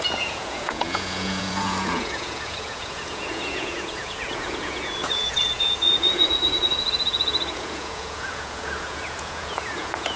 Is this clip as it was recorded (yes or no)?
no